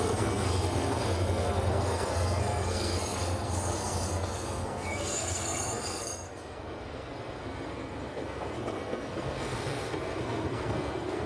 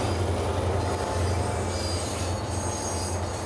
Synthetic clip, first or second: first